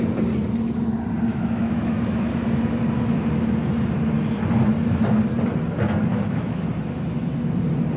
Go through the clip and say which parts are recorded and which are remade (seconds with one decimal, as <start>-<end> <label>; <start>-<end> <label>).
0.0-1.3 recorded; 1.3-2.3 remade; 2.3-6.1 recorded; 6.1-6.6 remade; 6.6-8.0 recorded